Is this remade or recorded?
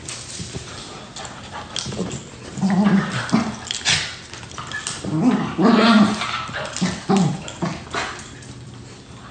recorded